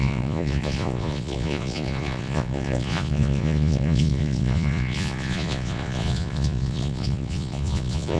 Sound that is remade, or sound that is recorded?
remade